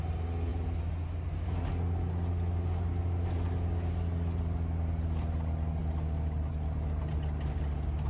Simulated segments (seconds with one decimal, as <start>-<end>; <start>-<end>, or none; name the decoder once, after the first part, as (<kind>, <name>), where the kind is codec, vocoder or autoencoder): none